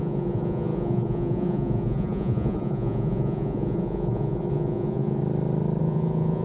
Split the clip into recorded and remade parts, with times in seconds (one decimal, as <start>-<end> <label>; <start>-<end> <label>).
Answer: 0.0-5.2 remade; 5.2-5.8 recorded; 5.8-6.4 remade